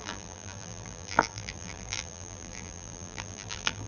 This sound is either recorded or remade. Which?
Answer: remade